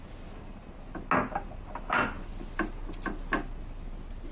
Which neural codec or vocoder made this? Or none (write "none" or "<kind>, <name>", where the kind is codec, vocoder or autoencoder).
none